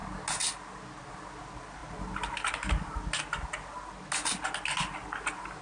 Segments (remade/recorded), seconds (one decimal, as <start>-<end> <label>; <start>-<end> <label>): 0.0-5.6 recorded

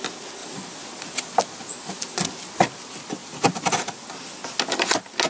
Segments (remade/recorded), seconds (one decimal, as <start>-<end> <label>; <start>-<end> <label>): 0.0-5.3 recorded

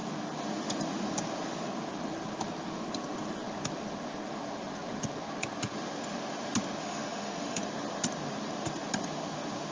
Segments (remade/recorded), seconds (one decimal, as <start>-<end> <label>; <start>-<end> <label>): 0.0-6.8 recorded; 6.8-7.6 remade; 7.6-9.7 recorded